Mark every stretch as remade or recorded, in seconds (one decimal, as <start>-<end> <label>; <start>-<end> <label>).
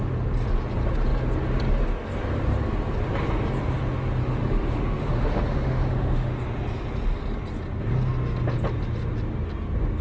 0.0-4.2 recorded; 4.2-6.3 remade; 6.3-10.0 recorded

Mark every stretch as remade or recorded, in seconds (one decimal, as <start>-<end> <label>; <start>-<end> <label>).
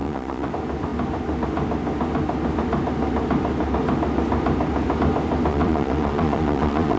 0.0-0.5 remade; 0.5-5.5 recorded; 5.5-7.0 remade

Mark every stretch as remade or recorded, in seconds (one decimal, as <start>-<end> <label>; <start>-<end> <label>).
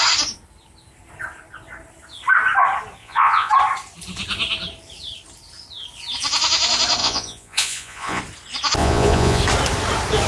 0.0-3.0 recorded; 3.0-3.5 remade; 3.5-7.0 recorded; 7.0-8.2 remade; 8.2-8.8 recorded; 8.8-9.4 remade; 9.4-10.3 recorded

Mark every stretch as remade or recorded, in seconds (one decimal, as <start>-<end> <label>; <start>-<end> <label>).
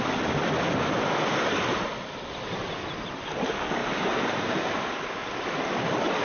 0.0-3.8 recorded; 3.8-4.8 remade; 4.8-6.2 recorded